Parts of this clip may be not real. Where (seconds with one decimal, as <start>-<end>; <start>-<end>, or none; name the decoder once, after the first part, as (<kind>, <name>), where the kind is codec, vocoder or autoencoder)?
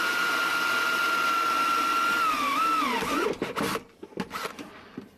none